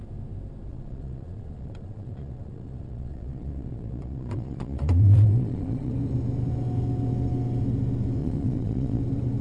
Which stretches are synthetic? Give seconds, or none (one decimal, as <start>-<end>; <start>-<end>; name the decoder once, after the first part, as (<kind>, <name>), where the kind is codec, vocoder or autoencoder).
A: 0.7-5.9 (vocoder, Vocos); 8.2-9.0